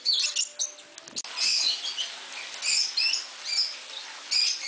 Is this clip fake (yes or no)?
no